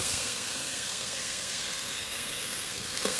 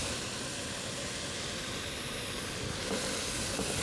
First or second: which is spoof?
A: first